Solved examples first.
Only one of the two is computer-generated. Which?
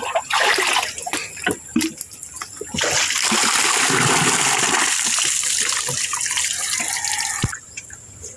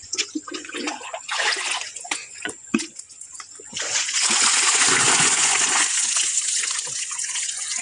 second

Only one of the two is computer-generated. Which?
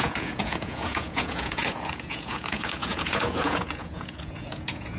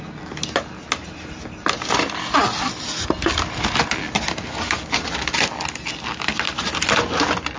first